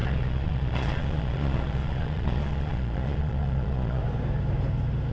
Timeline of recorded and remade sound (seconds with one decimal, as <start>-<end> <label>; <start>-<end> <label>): 0.0-4.0 remade; 4.0-5.1 recorded